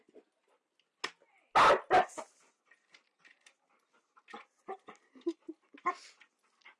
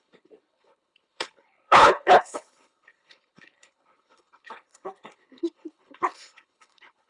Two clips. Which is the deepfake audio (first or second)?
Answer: second